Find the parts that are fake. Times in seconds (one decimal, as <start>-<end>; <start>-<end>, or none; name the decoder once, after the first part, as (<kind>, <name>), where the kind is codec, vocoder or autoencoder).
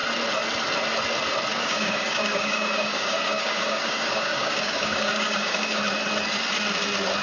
1.5-5.8 (codec, DAC)